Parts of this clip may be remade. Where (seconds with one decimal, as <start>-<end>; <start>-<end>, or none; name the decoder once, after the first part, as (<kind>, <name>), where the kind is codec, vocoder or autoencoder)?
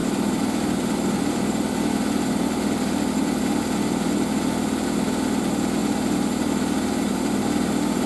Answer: 0.0-3.4 (vocoder, BigVGAN v2)